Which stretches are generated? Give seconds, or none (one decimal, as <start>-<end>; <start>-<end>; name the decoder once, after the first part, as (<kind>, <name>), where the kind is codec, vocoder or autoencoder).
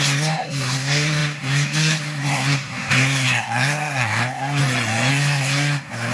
0.0-4.6 (codec, SNAC); 5.1-6.1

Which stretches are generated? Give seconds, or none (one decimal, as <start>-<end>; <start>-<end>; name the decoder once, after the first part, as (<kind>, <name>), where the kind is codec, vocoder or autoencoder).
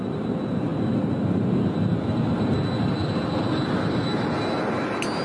none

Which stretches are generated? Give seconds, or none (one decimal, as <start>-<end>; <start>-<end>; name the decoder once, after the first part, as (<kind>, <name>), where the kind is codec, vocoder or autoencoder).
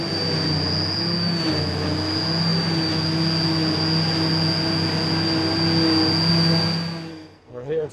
7.1-7.9 (codec, SNAC)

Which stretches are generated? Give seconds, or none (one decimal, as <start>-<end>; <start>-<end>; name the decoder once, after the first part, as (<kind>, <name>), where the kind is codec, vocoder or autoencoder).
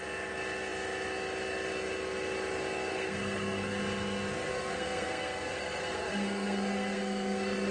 2.9-3.8 (codec, SNAC); 4.5-7.7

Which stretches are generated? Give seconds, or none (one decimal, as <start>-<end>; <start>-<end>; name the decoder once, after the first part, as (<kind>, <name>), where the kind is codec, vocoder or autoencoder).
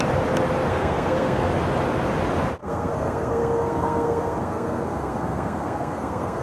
0.7-1.5 (codec, SNAC); 2.6-6.4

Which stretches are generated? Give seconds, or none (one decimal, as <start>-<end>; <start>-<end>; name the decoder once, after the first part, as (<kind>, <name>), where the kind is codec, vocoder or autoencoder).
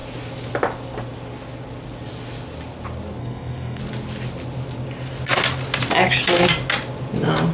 3.2-3.8 (codec, SNAC)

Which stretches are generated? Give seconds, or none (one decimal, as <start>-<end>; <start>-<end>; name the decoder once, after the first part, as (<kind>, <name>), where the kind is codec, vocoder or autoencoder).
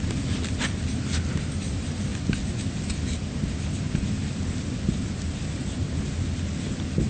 none